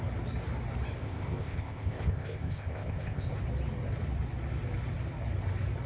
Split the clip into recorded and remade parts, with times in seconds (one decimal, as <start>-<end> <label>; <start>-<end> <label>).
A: 0.0-1.0 recorded; 1.0-3.3 remade; 3.3-5.9 recorded